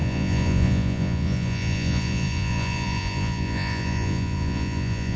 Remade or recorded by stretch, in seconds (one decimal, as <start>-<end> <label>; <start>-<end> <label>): 0.0-5.2 remade